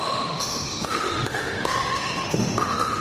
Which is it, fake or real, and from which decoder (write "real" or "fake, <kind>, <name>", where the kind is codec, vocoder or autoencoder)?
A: fake, autoencoder, DAC-VAE